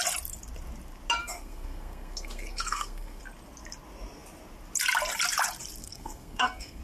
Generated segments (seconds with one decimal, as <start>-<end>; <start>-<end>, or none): 1.2-3.2; 5.8-6.8